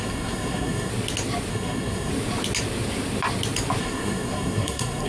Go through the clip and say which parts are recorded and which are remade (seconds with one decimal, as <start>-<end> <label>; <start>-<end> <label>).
0.0-0.9 remade; 0.9-1.5 recorded; 1.5-2.1 remade; 2.1-3.8 recorded; 3.8-5.1 remade